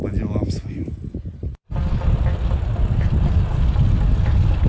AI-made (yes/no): no